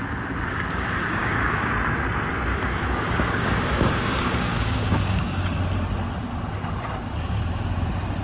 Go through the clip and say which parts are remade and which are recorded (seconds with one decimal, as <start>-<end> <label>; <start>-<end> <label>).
0.0-0.5 recorded; 0.5-1.7 remade; 1.7-2.5 recorded; 2.5-5.6 remade; 5.6-8.2 recorded